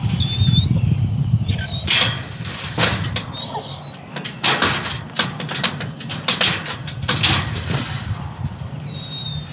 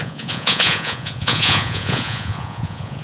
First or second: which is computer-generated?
second